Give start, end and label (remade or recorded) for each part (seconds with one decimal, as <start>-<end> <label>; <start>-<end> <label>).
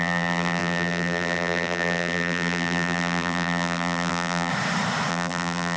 0.0-4.5 remade; 4.5-5.1 recorded; 5.1-5.8 remade